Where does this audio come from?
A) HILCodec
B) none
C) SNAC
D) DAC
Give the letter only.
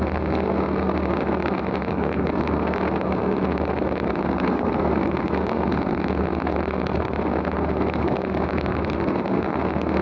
C